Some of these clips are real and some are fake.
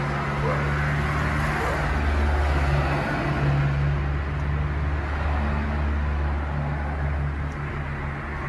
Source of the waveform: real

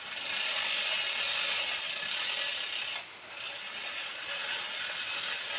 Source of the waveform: real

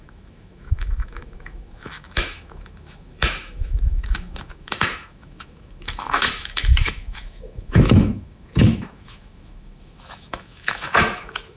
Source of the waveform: fake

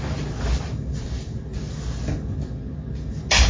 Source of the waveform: real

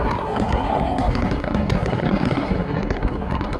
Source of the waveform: fake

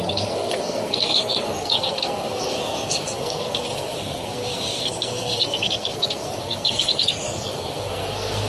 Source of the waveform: fake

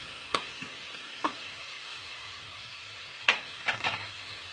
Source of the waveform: fake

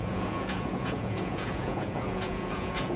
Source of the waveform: fake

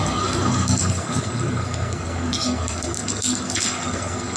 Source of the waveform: fake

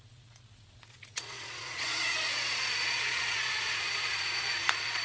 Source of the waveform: fake